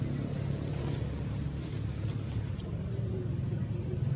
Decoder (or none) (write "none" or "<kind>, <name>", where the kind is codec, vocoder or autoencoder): none